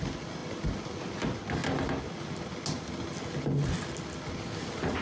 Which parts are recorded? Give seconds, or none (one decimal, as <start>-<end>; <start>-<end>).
0.0-5.0